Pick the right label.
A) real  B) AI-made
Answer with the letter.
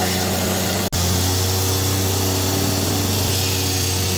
A